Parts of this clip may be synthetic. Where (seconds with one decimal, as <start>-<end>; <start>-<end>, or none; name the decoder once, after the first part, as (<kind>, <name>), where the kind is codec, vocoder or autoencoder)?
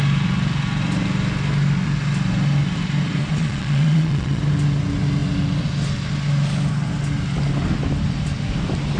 3.2-4.4 (vocoder, Vocos)